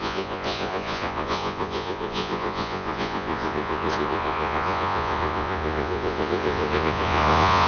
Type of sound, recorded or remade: remade